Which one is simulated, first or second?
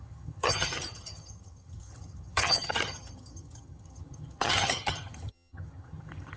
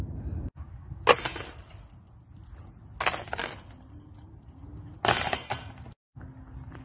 first